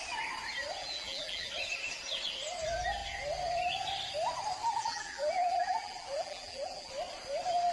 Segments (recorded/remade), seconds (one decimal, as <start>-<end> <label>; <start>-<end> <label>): 0.0-0.8 recorded; 0.8-1.5 remade; 1.5-4.6 recorded; 4.6-6.9 remade; 6.9-7.7 recorded